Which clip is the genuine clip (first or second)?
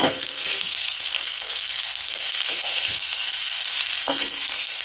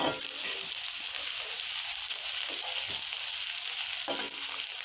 second